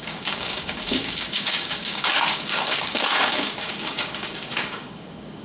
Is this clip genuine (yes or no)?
no